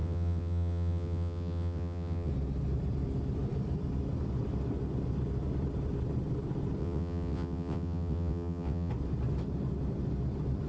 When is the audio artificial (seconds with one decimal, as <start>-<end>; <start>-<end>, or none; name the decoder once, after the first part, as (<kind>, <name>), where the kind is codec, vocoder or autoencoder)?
0.0-2.3 (vocoder, WaveNeXt); 6.8-8.9